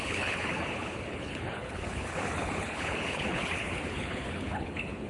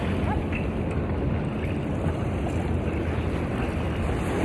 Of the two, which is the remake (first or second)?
first